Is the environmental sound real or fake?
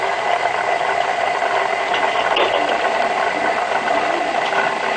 real